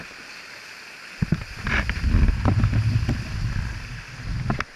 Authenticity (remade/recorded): recorded